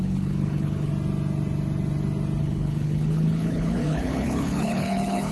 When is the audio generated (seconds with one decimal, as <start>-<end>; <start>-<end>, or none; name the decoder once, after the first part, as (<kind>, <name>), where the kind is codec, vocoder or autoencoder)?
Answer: 0.0-0.9 (codec, HILCodec); 2.4-5.3